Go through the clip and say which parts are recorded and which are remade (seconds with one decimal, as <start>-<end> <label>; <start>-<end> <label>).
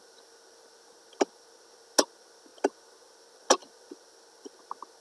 0.0-5.0 recorded